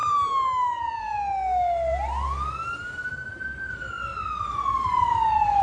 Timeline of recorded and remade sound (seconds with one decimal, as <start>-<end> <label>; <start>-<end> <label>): 0.0-5.6 recorded